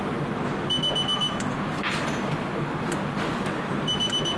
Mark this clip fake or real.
real